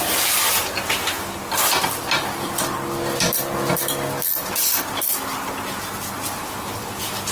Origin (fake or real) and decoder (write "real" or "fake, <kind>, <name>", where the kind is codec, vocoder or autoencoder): real